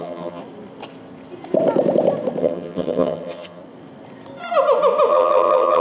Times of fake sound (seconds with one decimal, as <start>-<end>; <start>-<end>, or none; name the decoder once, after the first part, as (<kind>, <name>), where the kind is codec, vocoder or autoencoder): 0.0-0.4 (vocoder, HiFi-GAN); 2.4-3.6; 5.1-5.8

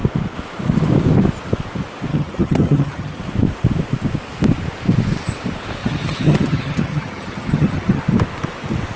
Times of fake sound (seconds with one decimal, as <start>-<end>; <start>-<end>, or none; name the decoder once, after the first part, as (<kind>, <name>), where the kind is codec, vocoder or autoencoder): 2.1-3.2 (vocoder, HiFi-GAN); 5.8-8.0